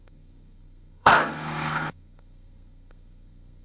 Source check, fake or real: fake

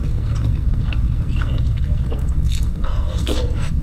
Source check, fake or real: fake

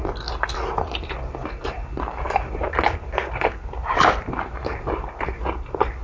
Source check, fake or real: real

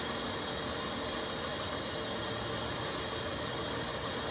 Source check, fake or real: real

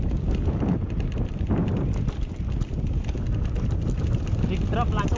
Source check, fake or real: real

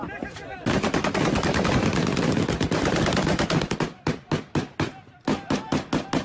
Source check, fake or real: real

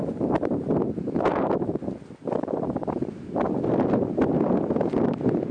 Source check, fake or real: real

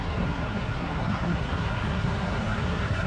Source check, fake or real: fake